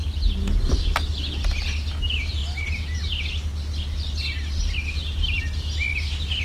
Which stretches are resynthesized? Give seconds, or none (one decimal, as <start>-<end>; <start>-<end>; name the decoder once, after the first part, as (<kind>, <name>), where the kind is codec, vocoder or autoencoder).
none